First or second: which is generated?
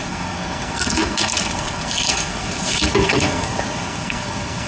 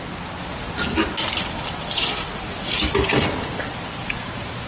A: first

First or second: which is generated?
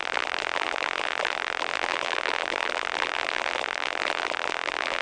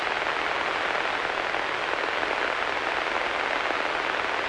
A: first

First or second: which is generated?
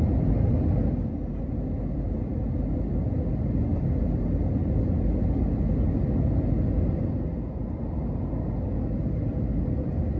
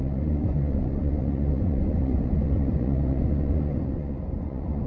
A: second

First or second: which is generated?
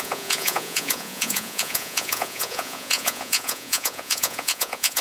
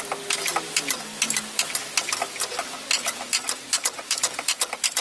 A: first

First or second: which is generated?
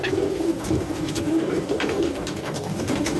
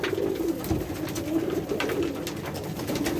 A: first